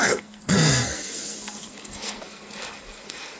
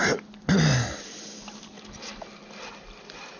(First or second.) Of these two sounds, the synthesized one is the first